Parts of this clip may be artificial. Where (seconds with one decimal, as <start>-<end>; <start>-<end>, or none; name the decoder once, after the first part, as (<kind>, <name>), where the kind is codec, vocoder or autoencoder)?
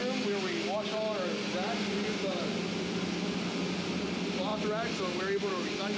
none